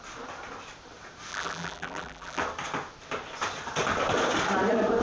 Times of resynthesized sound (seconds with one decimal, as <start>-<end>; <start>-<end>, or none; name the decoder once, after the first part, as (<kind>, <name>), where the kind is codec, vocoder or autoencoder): 1.3-2.4 (vocoder, BigVGAN v2)